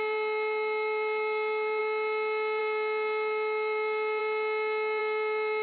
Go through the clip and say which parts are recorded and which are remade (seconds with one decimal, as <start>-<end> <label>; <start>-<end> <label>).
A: 0.0-1.8 remade; 1.8-2.6 recorded; 2.6-4.2 remade; 4.2-5.0 recorded; 5.0-5.6 remade